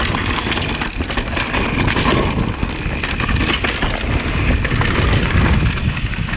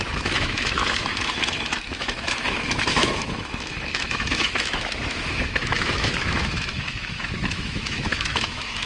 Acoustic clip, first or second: first